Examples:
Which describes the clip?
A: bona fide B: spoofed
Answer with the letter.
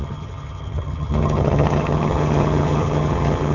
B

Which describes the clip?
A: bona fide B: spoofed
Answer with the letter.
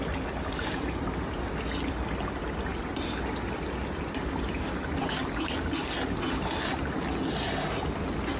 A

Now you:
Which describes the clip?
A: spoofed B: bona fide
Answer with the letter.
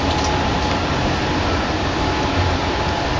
B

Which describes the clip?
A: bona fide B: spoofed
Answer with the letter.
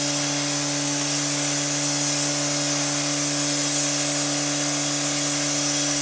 A